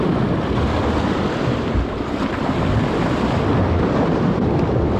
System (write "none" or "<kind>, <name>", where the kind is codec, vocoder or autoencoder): none